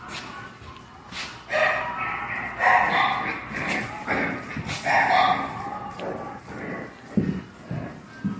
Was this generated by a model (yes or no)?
no